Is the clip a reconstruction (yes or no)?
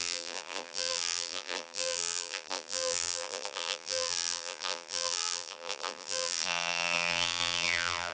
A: yes